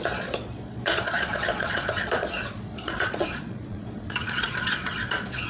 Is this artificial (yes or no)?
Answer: yes